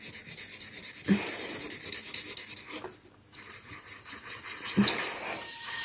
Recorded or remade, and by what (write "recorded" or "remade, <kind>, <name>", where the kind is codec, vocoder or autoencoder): recorded